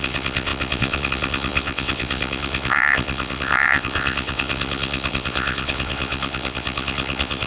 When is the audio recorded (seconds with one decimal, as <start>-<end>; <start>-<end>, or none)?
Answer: none